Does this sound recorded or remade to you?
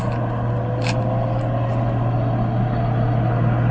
recorded